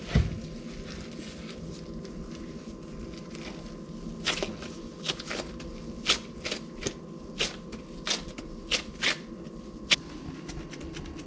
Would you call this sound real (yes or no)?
yes